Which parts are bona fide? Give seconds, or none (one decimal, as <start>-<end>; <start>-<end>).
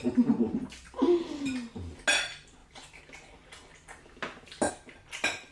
0.0-5.5